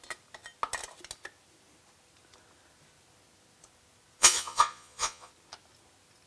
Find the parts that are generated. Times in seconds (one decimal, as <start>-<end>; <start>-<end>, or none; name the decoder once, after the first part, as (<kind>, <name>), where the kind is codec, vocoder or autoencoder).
4.2-5.3 (vocoder, Vocos)